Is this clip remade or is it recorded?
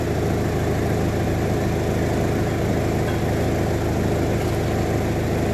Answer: recorded